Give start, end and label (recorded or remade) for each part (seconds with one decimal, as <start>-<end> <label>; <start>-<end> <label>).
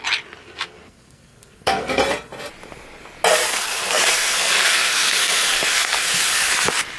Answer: 0.0-0.4 recorded; 0.4-2.0 remade; 2.0-3.4 recorded; 3.4-6.5 remade; 6.5-7.0 recorded